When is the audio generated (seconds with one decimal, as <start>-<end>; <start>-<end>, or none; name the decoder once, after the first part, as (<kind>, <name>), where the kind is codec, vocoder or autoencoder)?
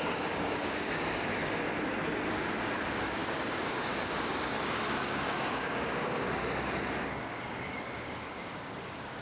0.0-1.4 (codec, DAC); 2.3-6.4; 7.0-9.2